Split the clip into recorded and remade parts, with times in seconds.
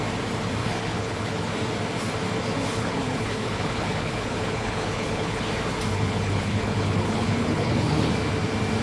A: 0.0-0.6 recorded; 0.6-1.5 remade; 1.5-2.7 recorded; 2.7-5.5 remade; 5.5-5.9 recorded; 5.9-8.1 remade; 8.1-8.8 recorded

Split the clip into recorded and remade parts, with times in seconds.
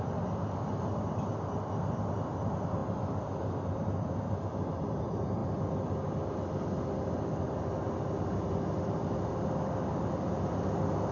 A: 0.0-11.1 recorded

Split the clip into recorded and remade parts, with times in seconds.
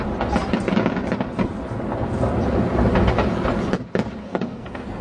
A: 0.0-4.2 recorded; 4.2-5.0 remade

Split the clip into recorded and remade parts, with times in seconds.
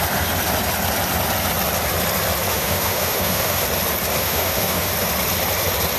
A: 0.0-2.5 recorded; 2.5-3.6 remade; 3.6-4.2 recorded; 4.2-4.9 remade; 4.9-6.0 recorded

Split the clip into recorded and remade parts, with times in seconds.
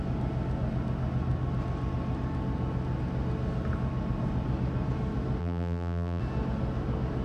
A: 0.0-5.4 recorded; 5.4-6.2 remade; 6.2-7.2 recorded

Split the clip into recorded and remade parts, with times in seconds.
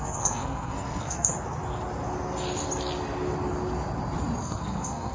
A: 0.0-1.3 remade; 1.3-4.4 recorded; 4.4-5.1 remade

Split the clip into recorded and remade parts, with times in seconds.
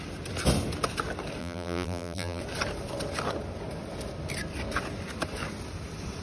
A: 0.0-1.4 recorded; 1.4-2.4 remade; 2.4-6.2 recorded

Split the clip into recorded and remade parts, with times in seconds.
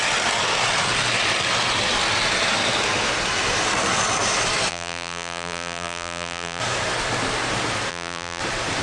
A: 0.0-4.7 recorded; 4.7-6.6 remade; 6.6-7.9 recorded; 7.9-8.4 remade; 8.4-8.8 recorded